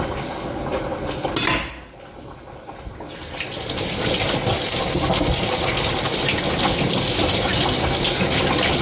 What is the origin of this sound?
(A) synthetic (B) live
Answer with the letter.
B